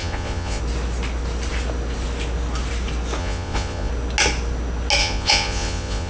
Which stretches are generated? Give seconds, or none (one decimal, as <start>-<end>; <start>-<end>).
0.0-0.6; 3.2-3.9; 5.0-6.1